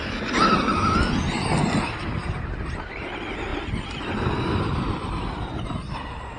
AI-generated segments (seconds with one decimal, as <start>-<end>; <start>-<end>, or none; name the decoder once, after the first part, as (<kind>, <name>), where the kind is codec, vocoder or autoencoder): none